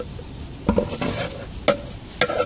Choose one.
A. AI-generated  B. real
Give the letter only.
B